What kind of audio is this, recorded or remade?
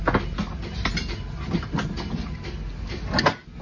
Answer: recorded